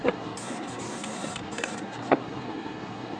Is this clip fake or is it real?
fake